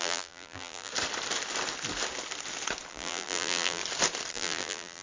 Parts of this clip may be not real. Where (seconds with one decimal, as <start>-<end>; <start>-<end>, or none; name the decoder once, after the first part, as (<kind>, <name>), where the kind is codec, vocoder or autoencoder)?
0.0-0.9 (vocoder, BigVGAN v2); 2.9-3.8; 4.3-5.0